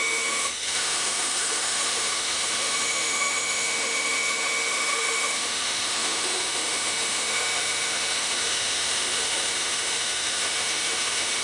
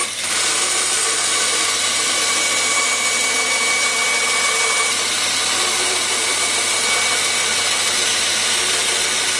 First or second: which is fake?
first